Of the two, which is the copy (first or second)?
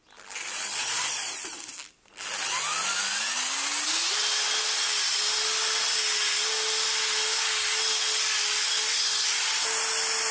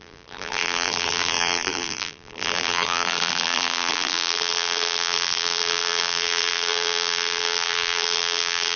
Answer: second